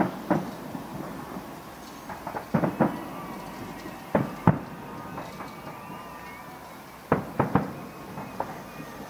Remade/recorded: recorded